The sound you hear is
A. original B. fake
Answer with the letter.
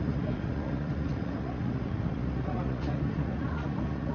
B